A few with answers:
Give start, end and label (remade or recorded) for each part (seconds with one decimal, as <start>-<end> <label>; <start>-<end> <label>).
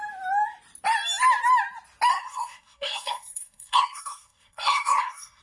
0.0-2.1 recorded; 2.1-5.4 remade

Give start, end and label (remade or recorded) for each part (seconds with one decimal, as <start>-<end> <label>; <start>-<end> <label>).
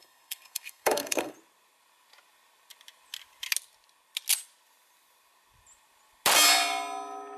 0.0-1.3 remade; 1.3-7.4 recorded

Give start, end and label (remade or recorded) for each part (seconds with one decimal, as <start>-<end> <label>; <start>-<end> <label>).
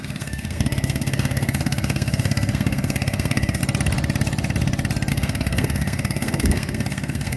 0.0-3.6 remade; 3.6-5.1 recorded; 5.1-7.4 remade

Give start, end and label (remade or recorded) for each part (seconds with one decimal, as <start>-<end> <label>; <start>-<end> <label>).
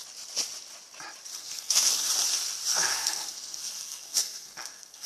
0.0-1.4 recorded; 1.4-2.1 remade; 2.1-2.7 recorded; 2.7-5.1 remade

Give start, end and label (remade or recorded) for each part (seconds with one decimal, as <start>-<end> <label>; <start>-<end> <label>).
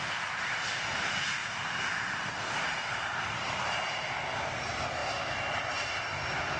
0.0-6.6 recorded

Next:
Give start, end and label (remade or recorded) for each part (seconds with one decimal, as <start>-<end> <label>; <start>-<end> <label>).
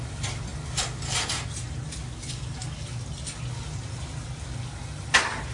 0.0-5.5 recorded